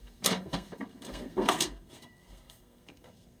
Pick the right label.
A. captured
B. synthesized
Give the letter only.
B